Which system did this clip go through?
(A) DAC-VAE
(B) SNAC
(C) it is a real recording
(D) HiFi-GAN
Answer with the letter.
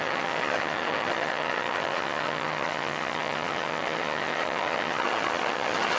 D